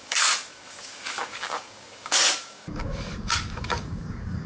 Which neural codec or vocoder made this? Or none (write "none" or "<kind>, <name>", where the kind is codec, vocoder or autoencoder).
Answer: codec, DAC